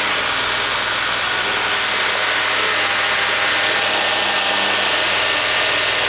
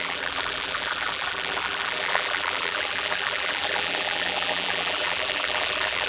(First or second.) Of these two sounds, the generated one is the second